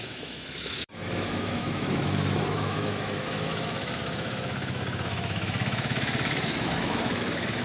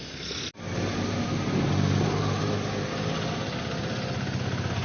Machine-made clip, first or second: first